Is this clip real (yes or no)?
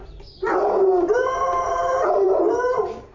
no